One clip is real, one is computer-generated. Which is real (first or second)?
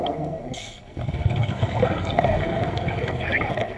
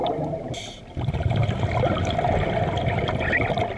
second